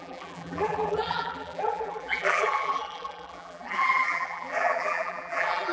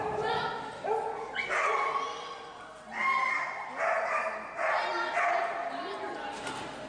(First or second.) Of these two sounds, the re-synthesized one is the first